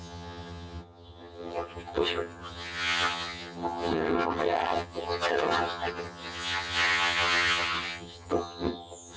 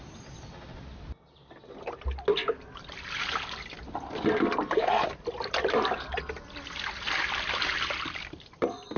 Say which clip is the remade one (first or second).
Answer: first